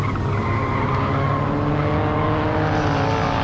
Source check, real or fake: real